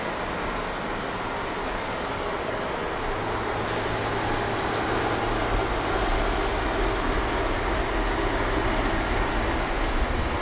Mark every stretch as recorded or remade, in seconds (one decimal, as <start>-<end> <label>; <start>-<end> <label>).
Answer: 0.0-1.6 recorded; 1.6-2.7 remade; 2.7-10.4 recorded